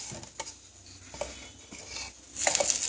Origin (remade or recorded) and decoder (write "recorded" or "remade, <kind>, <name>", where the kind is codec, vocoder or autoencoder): recorded